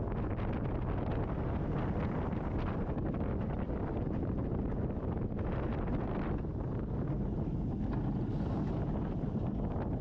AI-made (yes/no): no